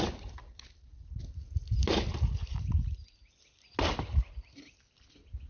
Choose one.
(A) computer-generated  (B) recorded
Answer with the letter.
B